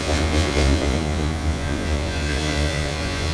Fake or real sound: fake